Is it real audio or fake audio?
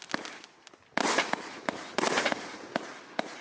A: real